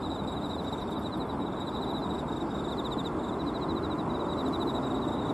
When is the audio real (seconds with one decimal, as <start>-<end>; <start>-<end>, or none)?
2.0-5.3